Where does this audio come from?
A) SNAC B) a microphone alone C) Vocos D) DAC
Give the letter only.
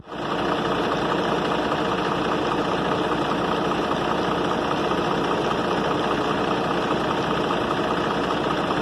B